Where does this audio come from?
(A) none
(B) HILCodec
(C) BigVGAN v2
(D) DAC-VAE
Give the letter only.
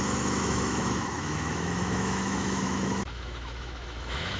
D